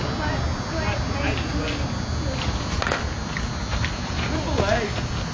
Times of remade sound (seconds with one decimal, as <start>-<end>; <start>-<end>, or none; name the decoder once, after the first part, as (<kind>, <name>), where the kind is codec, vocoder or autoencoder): none